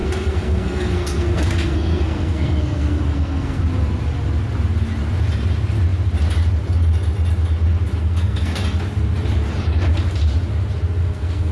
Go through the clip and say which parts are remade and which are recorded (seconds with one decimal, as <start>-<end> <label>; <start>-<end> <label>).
0.0-3.6 remade; 3.6-8.0 recorded; 8.0-8.6 remade; 8.6-11.0 recorded; 11.0-11.5 remade